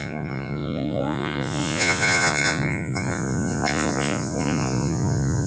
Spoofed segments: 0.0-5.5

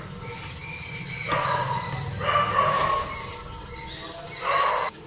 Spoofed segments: none

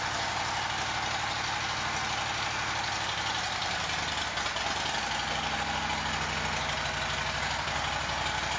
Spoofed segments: none

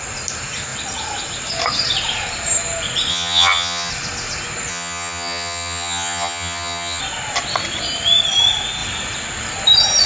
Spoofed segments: 3.1-3.9; 4.7-7.0